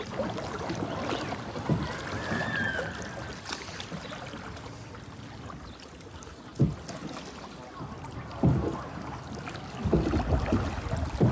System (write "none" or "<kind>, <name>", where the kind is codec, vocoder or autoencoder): none